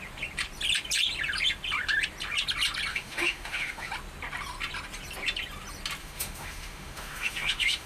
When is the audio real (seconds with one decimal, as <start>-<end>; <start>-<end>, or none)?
0.0-2.9; 3.9-6.0